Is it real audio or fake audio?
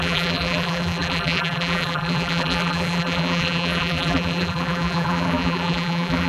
fake